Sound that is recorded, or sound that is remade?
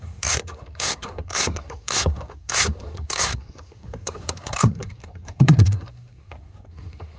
remade